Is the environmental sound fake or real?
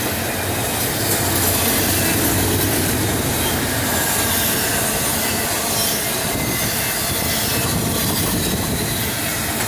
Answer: real